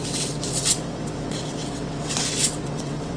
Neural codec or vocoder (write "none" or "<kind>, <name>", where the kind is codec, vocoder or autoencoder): vocoder, WaveNeXt